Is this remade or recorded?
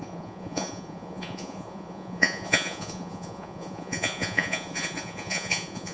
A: remade